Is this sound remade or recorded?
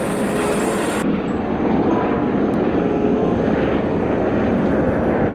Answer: recorded